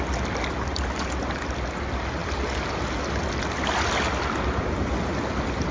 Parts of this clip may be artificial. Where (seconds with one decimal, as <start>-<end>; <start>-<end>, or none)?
none